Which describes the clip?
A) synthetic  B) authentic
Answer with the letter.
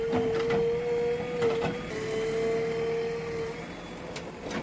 B